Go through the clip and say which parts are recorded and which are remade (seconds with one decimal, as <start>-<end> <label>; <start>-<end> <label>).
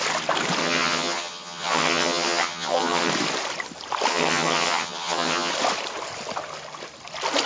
0.0-0.6 recorded; 0.6-3.1 remade; 3.1-4.1 recorded; 4.1-5.5 remade; 5.5-7.5 recorded